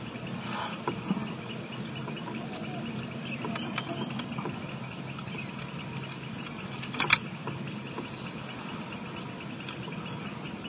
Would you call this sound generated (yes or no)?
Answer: no